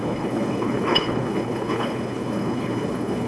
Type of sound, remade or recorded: remade